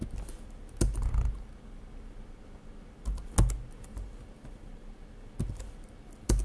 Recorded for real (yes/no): yes